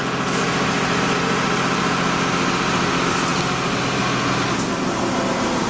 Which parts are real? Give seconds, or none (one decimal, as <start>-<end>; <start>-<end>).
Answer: 0.0-5.7